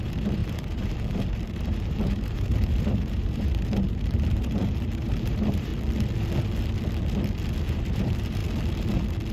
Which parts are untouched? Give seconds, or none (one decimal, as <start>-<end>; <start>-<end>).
5.7-7.7; 8.4-9.3